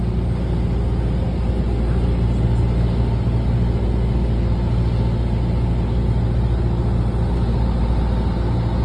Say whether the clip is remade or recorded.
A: recorded